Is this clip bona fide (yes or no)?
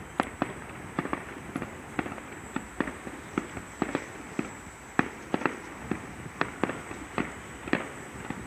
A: yes